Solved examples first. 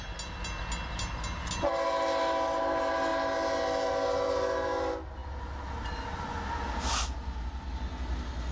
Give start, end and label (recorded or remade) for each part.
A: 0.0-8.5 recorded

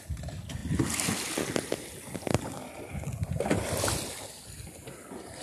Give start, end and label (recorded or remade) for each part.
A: 0.0-5.4 recorded

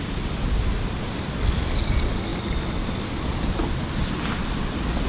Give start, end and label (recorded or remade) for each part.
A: 0.0-5.1 recorded

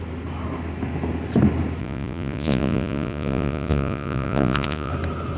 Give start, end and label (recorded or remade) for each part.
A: 0.0-1.8 recorded; 1.8-4.9 remade; 4.9-5.4 recorded

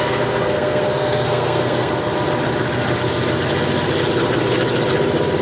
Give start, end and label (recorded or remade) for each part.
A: 0.0-1.9 remade; 1.9-5.4 recorded

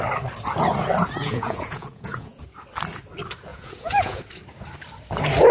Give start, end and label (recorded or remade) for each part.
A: 0.0-1.2 recorded; 1.2-2.4 remade; 2.4-3.5 recorded; 3.5-4.2 remade; 4.2-5.5 recorded